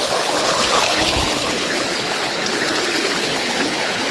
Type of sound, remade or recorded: remade